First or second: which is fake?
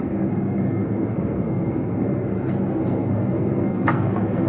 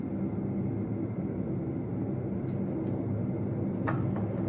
first